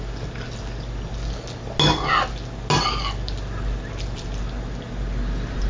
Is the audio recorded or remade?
recorded